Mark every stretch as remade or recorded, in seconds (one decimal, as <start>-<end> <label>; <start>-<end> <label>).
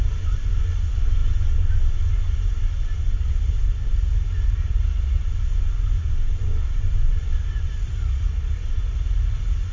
0.0-6.6 recorded; 6.6-8.4 remade; 8.4-9.7 recorded